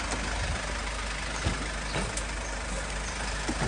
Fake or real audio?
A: real